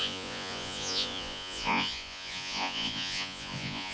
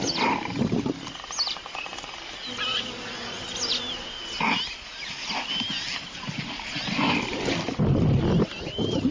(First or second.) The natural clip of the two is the second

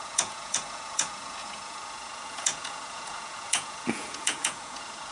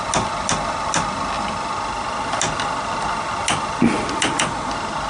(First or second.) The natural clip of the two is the second